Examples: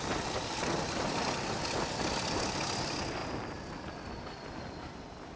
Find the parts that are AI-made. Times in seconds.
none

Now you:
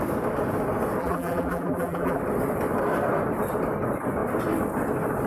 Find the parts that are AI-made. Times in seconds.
1.0-2.2 (vocoder, BigVGAN v2)

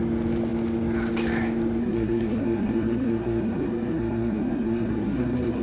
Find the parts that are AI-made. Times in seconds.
1.8-5.6 (codec, SNAC)